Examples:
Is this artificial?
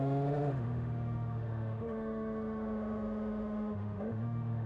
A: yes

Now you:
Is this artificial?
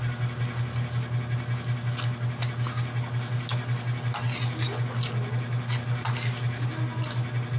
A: no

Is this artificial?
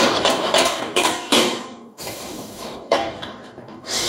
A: yes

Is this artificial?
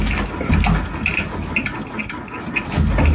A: no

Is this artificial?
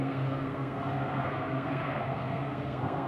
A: yes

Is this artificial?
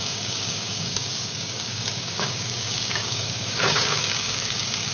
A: yes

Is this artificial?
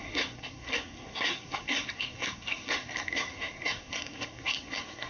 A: yes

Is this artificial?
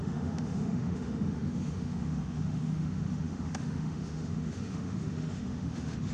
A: yes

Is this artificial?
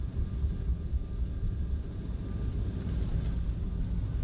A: no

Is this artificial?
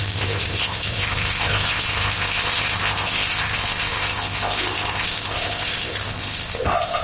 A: yes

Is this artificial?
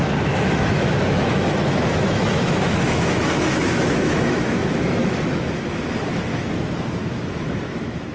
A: yes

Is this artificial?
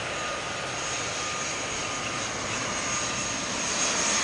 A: no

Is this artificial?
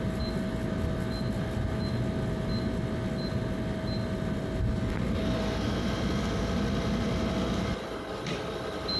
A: no